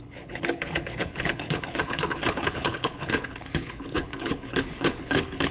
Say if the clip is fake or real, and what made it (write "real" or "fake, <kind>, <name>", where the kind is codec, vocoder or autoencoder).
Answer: fake, codec, HILCodec